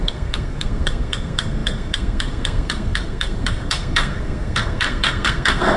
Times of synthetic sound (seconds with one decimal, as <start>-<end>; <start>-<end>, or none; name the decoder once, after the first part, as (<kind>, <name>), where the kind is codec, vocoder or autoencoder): 0.0-5.8 (codec, SNAC)